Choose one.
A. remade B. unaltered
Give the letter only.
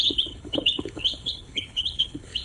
A